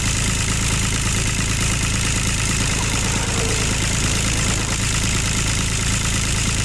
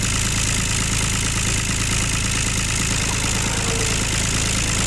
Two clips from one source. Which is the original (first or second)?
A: second